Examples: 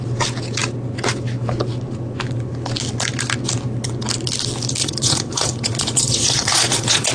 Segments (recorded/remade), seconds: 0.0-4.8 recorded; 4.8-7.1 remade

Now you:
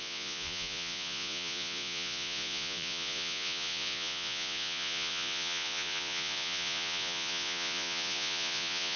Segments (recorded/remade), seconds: 0.0-9.0 remade

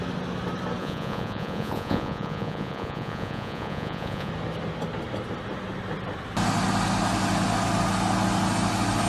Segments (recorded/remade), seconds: 0.0-0.8 recorded; 0.8-4.3 remade; 4.3-9.1 recorded

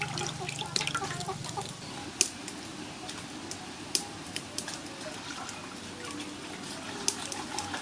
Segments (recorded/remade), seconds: 0.0-7.8 recorded

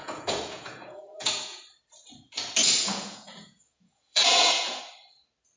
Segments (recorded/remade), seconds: 0.0-1.6 remade; 1.6-2.6 recorded; 2.6-4.8 remade; 4.8-5.6 recorded

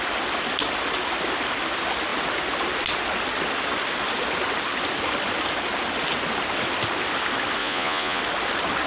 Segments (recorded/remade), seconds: 0.0-7.6 recorded; 7.6-8.2 remade; 8.2-8.9 recorded

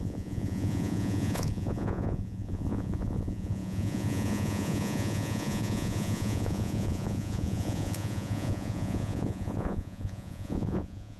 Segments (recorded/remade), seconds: 0.0-11.2 remade

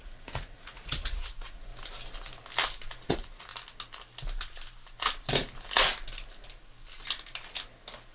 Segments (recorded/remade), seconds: 0.0-1.7 remade; 1.7-3.1 recorded; 3.1-3.5 remade; 3.5-8.1 recorded